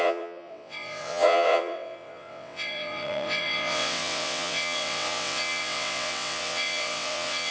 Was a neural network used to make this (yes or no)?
yes